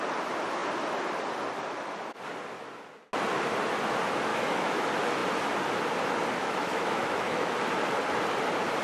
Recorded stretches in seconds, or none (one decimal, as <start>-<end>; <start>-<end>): 0.0-4.3; 4.8-6.4; 7.5-8.8